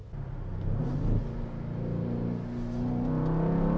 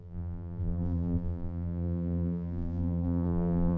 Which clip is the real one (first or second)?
first